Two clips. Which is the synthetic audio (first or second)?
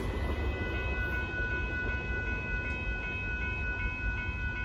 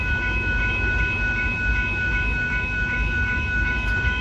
second